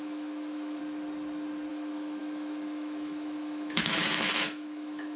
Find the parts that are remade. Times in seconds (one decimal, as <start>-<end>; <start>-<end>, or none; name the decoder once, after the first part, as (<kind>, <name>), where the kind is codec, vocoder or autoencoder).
0.0-0.8 (autoencoder, DAC-VAE); 1.7-5.2